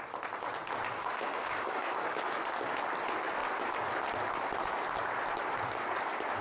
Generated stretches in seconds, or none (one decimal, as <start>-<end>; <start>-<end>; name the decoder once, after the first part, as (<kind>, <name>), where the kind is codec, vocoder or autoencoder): 1.0-2.4 (codec, DAC)